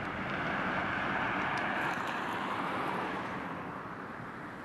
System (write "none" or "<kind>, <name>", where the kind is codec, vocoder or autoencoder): vocoder, BigVGAN v2